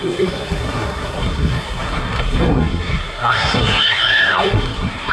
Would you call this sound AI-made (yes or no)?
yes